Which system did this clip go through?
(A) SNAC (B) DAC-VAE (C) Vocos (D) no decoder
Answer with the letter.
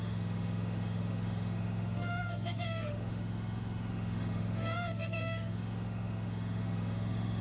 B